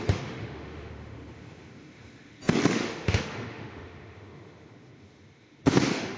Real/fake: fake